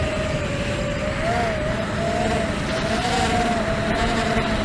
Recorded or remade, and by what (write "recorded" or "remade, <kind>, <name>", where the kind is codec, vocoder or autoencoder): recorded